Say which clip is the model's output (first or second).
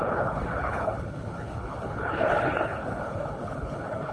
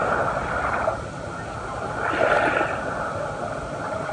first